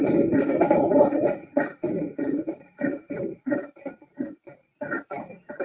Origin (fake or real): real